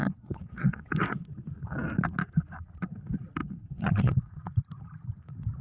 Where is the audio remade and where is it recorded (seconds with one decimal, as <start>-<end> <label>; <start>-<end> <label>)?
0.0-0.9 remade; 0.9-3.4 recorded; 3.4-4.5 remade; 4.5-5.6 recorded